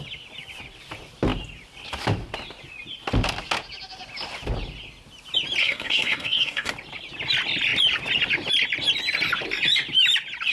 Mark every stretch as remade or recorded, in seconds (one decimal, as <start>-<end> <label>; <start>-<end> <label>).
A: 0.0-5.6 recorded; 5.6-6.7 remade; 6.7-10.5 recorded